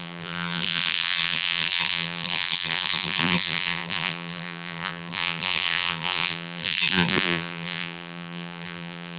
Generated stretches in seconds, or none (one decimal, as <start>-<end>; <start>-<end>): 0.0-9.2